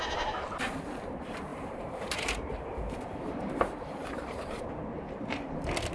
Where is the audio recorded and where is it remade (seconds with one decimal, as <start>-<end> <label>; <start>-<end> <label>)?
0.0-1.5 recorded; 1.5-5.0 remade; 5.0-5.9 recorded